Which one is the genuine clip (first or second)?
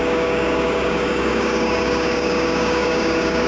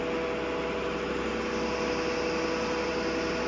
second